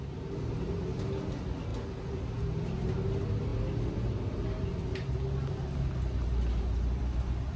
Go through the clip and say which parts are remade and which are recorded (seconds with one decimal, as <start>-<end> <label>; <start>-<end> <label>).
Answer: 0.0-7.6 recorded